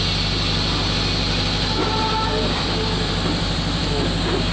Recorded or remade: remade